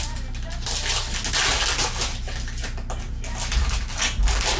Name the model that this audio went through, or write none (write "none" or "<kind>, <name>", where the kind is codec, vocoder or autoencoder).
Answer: none